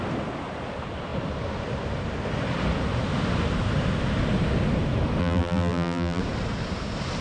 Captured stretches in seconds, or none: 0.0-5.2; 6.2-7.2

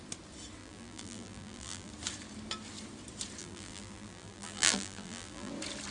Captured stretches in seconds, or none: 0.0-0.6; 1.9-3.4; 5.5-5.9

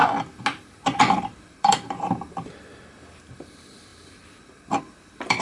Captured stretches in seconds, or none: 0.0-0.7

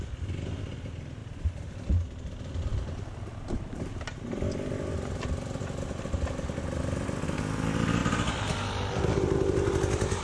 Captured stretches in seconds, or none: 0.0-1.2; 1.7-2.7; 6.8-8.0

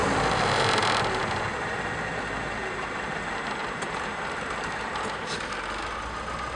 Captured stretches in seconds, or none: 3.2-3.6; 5.3-6.6

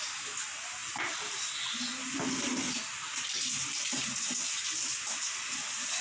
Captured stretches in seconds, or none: 0.0-0.8; 3.5-6.0